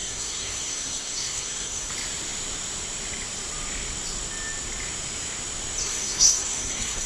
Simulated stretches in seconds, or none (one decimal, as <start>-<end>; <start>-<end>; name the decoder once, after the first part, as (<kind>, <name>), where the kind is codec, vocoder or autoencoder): 0.0-1.9 (codec, SNAC); 5.8-7.1